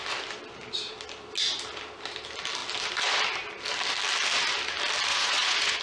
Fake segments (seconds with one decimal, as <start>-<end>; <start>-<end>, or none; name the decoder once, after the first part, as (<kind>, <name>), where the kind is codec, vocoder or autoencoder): 5.1-5.8 (vocoder, Vocos)